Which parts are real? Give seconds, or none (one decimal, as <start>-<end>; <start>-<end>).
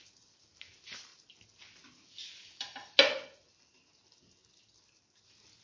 0.0-5.6